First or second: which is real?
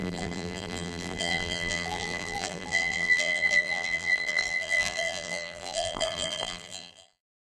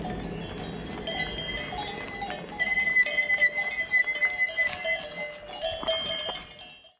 second